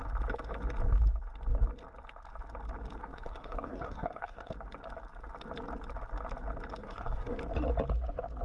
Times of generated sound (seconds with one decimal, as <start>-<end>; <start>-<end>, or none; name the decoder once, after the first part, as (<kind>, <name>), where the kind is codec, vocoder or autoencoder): 3.0-4.5 (codec, SNAC); 6.8-7.4